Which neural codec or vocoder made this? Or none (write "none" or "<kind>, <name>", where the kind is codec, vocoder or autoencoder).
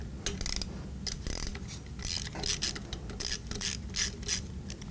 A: none